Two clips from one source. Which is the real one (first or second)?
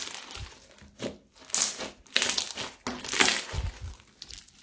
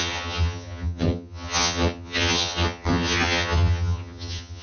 first